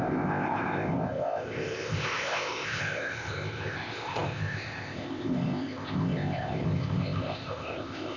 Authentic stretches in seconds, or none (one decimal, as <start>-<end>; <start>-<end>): none